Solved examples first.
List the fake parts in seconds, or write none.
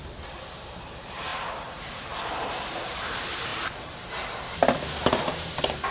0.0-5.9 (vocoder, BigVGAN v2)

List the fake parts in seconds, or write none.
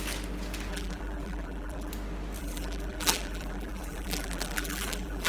0.7-1.9 (vocoder, BigVGAN v2); 2.4-5.3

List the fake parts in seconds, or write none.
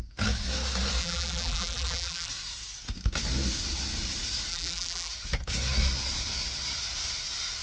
1.0-2.3 (vocoder, BigVGAN v2); 4.5-5.1